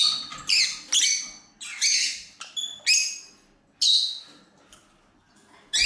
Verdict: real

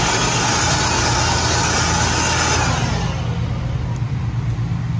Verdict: real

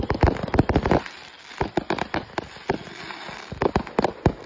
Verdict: real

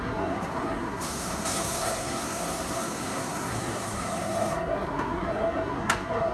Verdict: fake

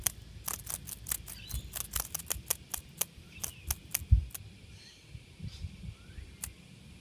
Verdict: real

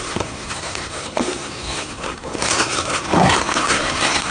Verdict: fake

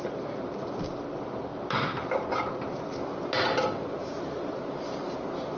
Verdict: real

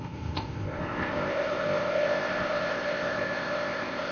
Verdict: fake